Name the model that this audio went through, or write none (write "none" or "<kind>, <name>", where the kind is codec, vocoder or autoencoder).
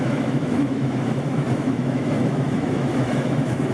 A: autoencoder, DAC-VAE